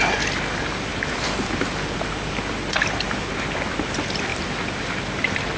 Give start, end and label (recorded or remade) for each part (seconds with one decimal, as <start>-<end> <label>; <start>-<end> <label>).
0.0-5.6 recorded